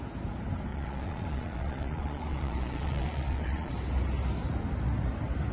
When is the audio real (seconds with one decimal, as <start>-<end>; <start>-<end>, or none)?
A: 0.0-0.7; 3.7-5.5